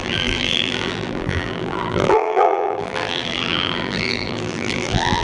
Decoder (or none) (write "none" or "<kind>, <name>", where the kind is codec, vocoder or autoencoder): vocoder, BigVGAN v2